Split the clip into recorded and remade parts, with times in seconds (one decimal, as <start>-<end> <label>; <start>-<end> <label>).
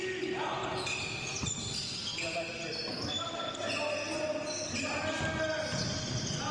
0.0-6.5 recorded